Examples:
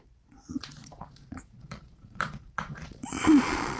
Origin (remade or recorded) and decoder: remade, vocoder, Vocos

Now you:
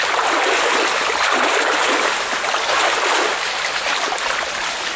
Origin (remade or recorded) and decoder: recorded